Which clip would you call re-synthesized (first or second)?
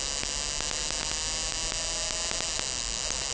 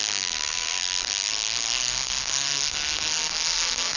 second